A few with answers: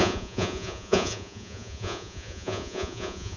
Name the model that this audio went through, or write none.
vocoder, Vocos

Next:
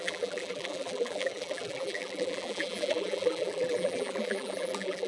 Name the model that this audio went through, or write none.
vocoder, BigVGAN v2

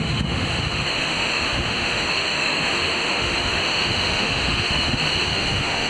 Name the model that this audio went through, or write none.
autoencoder, DAC-VAE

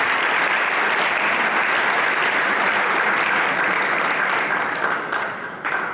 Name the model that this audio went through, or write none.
none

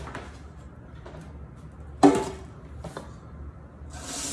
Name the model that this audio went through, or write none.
none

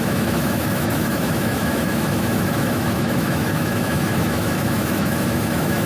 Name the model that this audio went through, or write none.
autoencoder, DAC-VAE